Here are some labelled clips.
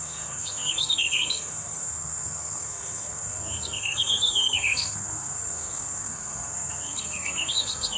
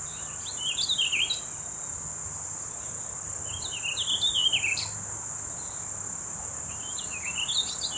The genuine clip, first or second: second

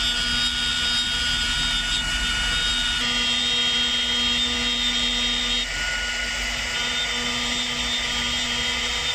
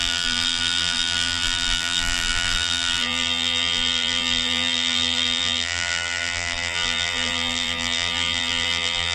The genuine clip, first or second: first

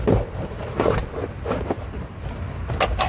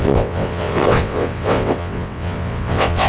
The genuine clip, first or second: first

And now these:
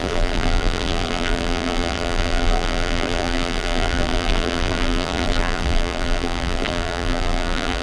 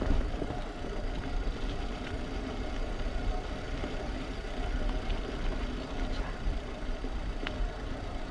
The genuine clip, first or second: second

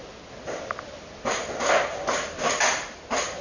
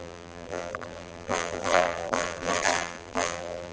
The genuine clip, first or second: first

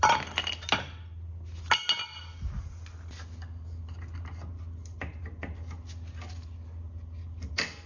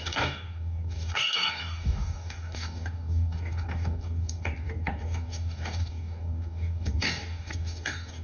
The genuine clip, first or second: first